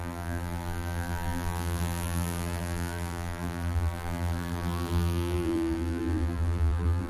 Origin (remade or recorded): remade